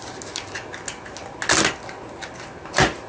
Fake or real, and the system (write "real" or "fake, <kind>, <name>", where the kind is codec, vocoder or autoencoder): real